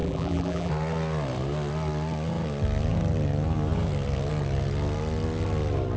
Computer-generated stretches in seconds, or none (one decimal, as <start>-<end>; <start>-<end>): 0.0-0.7